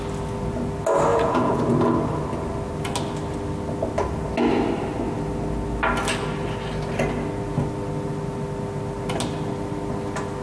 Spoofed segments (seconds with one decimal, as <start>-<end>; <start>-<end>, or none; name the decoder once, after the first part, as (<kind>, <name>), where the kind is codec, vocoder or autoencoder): 1.1-1.6 (vocoder, Vocos)